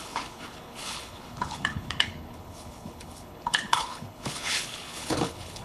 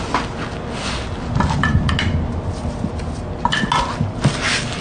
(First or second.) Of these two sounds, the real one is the second